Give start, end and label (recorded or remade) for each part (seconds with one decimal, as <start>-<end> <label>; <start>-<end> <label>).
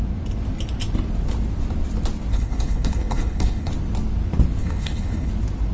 0.0-2.3 recorded; 2.3-3.7 remade; 3.7-4.6 recorded; 4.6-5.3 remade; 5.3-5.7 recorded